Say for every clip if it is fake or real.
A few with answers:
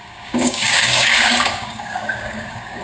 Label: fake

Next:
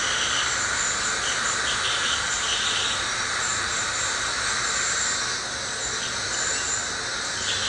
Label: real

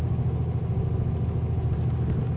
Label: real